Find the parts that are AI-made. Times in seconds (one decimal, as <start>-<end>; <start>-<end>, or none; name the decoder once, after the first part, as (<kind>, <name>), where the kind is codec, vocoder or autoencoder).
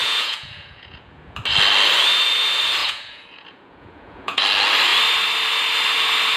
0.0-1.4 (vocoder, Vocos); 2.8-4.4